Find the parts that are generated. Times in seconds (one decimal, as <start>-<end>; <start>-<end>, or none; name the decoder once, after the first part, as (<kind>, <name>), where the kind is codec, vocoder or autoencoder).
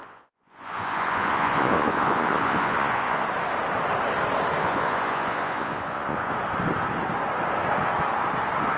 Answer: 0.0-3.2 (vocoder, Vocos); 4.6-6.3